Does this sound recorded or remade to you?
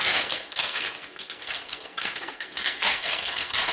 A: remade